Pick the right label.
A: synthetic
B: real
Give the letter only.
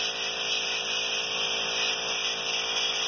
B